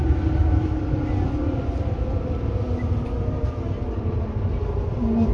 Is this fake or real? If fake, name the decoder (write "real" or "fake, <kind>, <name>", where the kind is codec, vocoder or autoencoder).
real